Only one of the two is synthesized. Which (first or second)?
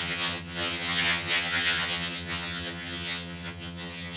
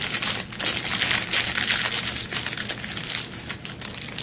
first